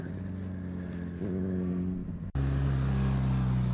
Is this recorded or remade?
recorded